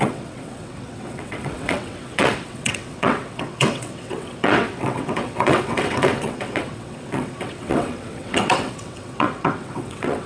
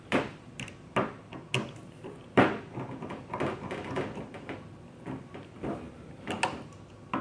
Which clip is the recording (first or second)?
second